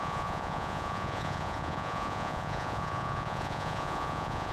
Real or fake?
fake